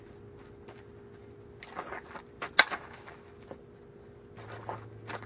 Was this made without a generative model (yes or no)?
yes